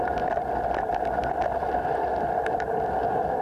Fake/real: real